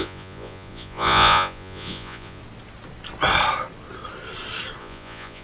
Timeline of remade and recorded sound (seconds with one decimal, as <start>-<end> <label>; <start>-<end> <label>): 0.0-2.4 remade; 2.4-4.8 recorded; 4.8-5.4 remade